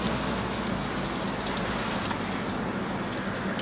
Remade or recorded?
recorded